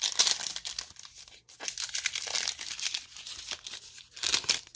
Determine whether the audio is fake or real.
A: real